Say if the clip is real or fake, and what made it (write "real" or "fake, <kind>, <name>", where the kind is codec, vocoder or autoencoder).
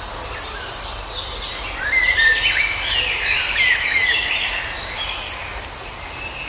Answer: real